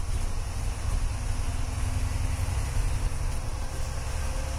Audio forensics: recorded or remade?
recorded